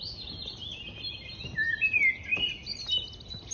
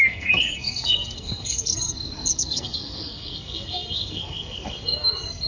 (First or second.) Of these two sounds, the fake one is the second